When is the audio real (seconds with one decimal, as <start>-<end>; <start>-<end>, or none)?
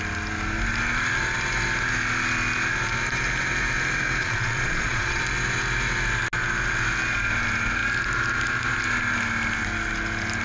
0.0-4.2; 5.2-10.4